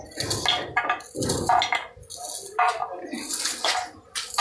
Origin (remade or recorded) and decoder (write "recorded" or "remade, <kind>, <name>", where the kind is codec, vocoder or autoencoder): recorded